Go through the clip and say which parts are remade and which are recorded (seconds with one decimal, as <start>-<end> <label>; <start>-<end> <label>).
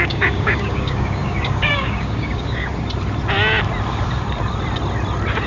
0.0-2.7 remade; 2.7-5.5 recorded